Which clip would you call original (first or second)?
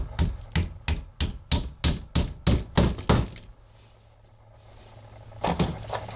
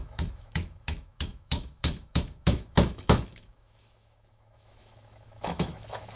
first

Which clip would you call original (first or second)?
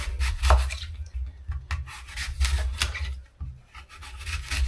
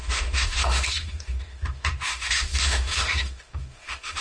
first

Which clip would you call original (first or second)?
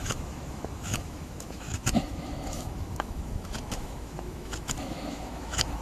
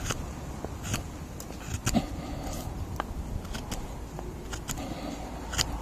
second